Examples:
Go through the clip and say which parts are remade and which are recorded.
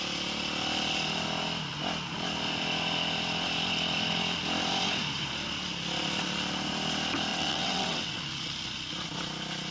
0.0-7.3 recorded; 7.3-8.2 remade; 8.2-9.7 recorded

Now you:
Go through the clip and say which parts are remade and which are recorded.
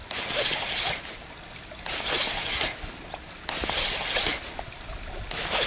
0.0-5.7 recorded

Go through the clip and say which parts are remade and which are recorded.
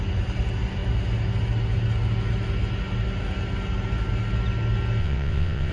0.0-5.0 recorded; 5.0-5.7 remade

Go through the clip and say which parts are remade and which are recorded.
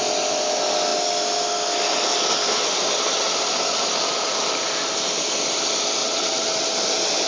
0.0-6.0 recorded; 6.0-6.6 remade; 6.6-7.3 recorded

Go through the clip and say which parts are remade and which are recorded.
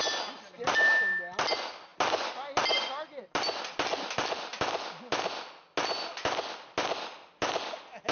0.0-8.1 recorded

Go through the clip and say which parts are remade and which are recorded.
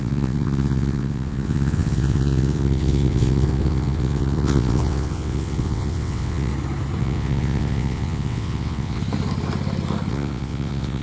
0.0-6.5 remade; 6.5-7.0 recorded; 7.0-9.0 remade; 9.0-10.1 recorded; 10.1-11.0 remade